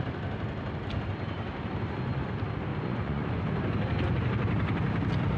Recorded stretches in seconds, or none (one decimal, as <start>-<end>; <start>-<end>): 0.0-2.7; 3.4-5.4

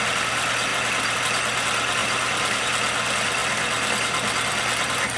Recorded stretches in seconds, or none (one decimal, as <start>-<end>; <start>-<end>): 0.0-0.7; 1.2-2.0; 2.6-5.2

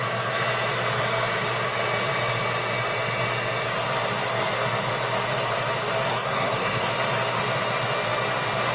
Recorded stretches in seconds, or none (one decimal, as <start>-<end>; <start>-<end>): 0.0-6.1; 6.9-8.7